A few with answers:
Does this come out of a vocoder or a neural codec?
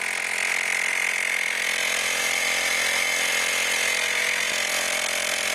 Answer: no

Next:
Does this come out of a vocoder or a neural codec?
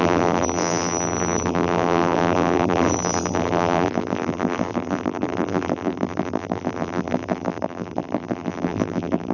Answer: yes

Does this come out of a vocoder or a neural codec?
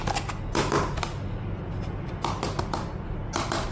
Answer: no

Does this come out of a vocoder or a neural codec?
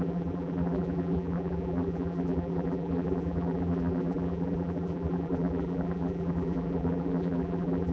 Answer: yes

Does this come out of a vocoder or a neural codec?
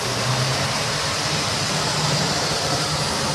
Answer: yes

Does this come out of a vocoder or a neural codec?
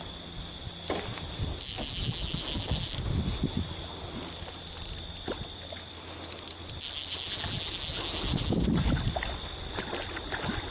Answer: no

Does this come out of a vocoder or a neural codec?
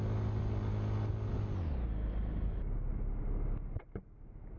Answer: no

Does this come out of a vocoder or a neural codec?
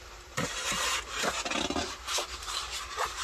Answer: yes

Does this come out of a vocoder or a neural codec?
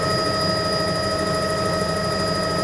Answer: no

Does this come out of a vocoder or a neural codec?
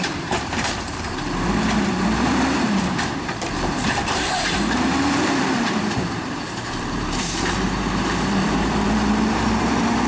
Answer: yes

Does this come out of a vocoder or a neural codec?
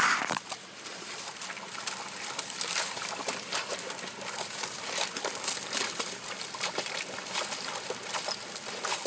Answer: yes